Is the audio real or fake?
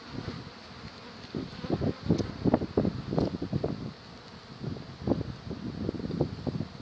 real